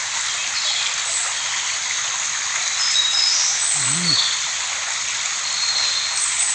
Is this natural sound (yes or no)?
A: yes